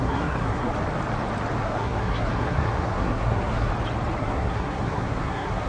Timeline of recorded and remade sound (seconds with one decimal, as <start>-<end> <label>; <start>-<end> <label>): 0.0-0.7 remade; 0.7-1.6 recorded; 1.6-3.7 remade; 3.7-4.2 recorded; 4.2-5.7 remade